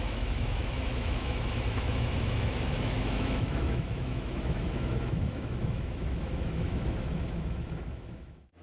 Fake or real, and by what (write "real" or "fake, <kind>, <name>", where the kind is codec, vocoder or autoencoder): fake, autoencoder, DAC-VAE